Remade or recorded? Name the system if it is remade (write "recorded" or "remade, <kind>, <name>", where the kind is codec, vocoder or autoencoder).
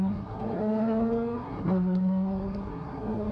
remade, codec, SNAC